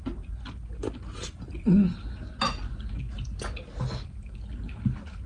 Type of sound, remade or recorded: recorded